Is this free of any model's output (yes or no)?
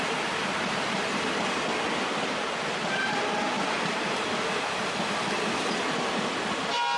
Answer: yes